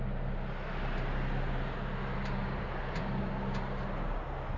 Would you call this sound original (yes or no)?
yes